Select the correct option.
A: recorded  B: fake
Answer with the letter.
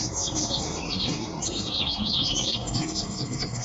B